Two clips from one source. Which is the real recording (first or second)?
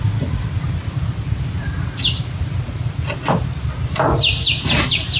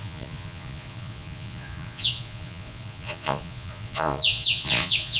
first